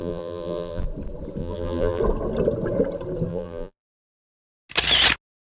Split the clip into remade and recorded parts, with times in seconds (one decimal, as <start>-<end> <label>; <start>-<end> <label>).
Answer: 0.0-0.8 remade; 0.8-1.4 recorded; 1.4-2.0 remade; 2.0-3.3 recorded; 3.3-3.9 remade; 3.9-5.5 recorded